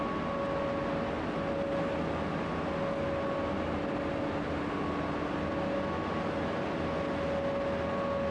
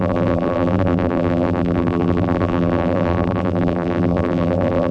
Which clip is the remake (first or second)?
second